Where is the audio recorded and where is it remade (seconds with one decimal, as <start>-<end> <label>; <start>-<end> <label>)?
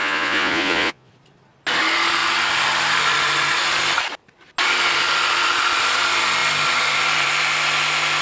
0.0-1.1 remade; 1.1-8.2 recorded